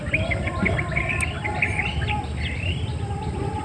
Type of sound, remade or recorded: recorded